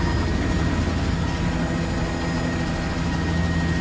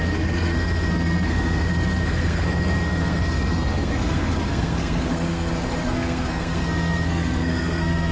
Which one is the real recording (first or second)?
first